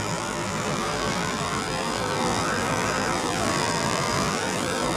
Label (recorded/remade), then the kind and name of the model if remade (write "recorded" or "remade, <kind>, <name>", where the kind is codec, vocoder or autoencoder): remade, vocoder, BigVGAN v2